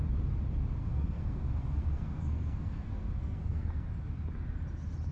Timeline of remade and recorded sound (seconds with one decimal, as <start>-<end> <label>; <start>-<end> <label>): 0.0-0.8 recorded; 0.8-3.9 remade; 3.9-5.1 recorded